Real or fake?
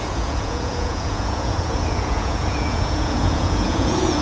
fake